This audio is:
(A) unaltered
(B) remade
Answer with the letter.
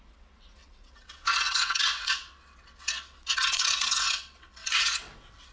B